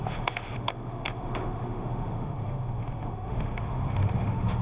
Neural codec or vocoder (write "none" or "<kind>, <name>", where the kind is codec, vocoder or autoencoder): autoencoder, DAC-VAE